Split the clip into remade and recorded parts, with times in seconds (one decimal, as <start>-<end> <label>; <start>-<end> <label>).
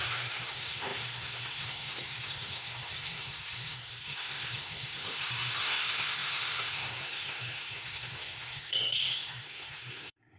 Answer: 0.0-10.4 remade